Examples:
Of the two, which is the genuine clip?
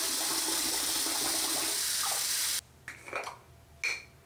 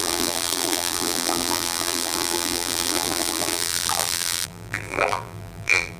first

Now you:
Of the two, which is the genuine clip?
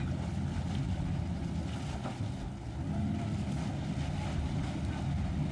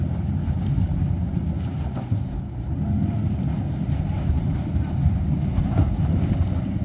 first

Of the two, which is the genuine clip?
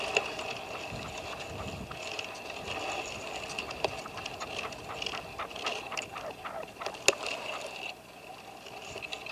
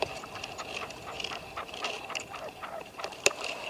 first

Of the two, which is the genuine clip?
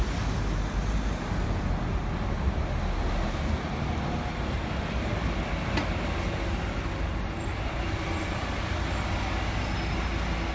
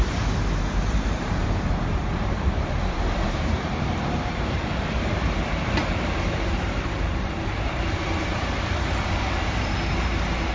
first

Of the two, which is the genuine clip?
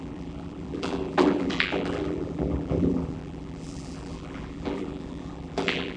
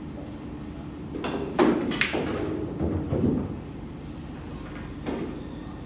second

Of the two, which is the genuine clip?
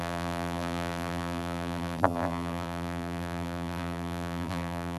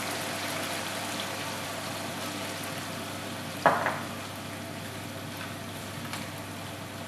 second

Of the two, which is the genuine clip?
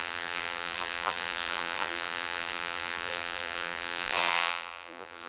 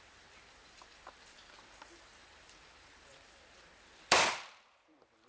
second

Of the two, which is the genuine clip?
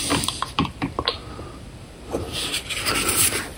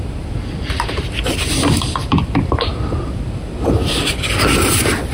first